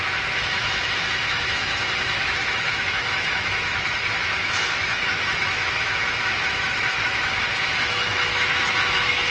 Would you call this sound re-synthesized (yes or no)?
yes